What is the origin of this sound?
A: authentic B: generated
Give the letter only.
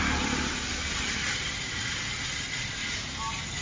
A